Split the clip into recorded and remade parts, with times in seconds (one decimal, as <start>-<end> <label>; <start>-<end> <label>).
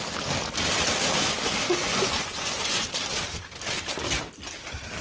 0.0-1.8 recorded; 1.8-2.9 remade; 2.9-5.0 recorded